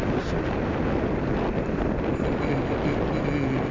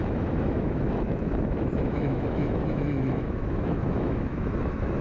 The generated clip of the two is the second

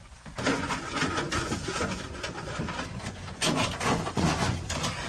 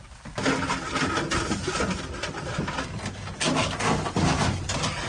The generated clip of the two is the first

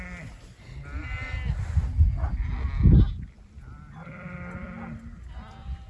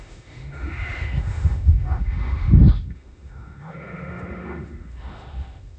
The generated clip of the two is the second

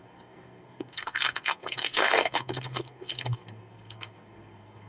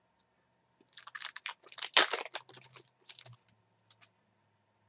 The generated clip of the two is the first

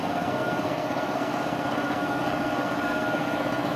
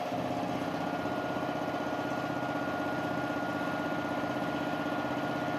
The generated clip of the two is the first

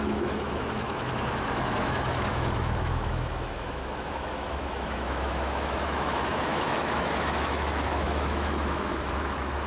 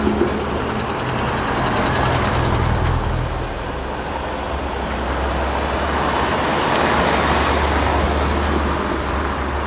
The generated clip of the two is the first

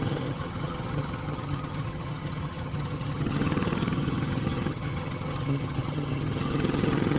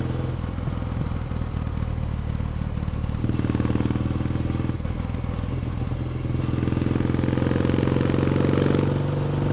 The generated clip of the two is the first